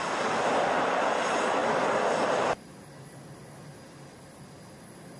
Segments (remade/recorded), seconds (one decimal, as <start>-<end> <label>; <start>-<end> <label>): 0.0-5.2 recorded